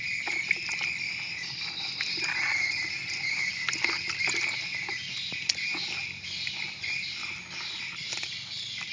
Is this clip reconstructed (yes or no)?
no